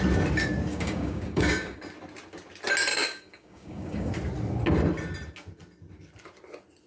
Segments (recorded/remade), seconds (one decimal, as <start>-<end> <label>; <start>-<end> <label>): 0.0-0.7 recorded; 0.7-1.8 remade; 1.8-2.9 recorded; 2.9-4.1 remade; 4.1-6.9 recorded